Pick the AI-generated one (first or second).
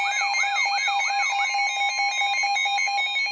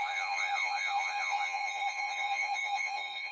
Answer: second